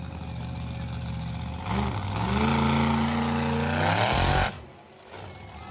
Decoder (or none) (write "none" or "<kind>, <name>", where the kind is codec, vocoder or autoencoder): none